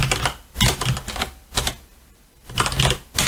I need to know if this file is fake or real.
real